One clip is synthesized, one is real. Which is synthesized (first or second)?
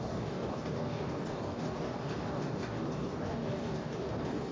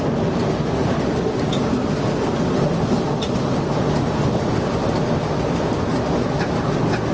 first